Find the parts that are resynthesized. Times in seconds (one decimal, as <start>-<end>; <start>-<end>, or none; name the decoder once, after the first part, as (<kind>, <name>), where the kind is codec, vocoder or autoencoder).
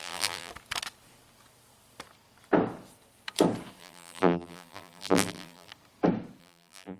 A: 0.0-0.5 (vocoder, BigVGAN v2); 3.8-5.7; 6.4-7.0